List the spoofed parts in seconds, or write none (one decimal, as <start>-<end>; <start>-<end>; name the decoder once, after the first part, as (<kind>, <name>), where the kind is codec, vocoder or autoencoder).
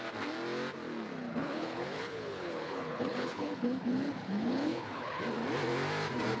1.4-5.2 (codec, HILCodec)